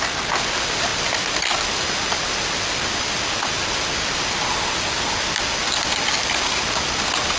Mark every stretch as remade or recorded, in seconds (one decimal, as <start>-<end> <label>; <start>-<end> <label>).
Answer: 0.0-7.4 recorded

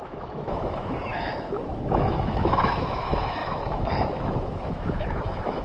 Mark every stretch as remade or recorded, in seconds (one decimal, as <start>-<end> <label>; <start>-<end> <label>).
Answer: 0.0-5.6 remade

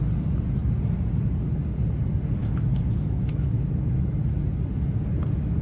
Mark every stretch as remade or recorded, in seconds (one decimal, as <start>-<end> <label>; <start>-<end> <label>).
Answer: 0.0-2.4 recorded; 2.4-3.7 remade; 3.7-5.6 recorded

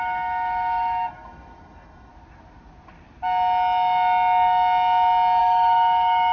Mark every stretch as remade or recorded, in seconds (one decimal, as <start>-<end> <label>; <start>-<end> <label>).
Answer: 0.0-2.1 remade; 2.1-5.4 recorded; 5.4-6.3 remade

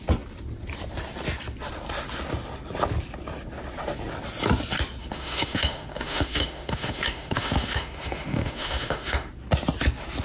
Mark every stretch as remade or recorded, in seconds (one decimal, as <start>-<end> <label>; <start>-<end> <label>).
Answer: 0.0-5.0 recorded; 5.0-9.3 remade; 9.3-10.2 recorded

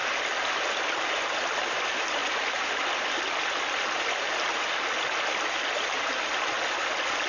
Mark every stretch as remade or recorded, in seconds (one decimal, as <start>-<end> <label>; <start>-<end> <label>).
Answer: 0.0-7.3 recorded

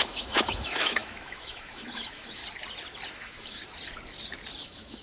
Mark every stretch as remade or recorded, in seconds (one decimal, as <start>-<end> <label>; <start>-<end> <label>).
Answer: 0.0-2.4 remade; 2.4-3.1 recorded; 3.1-3.6 remade; 3.6-4.6 recorded; 4.6-5.0 remade